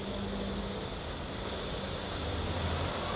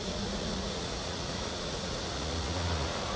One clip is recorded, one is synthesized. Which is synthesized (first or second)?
second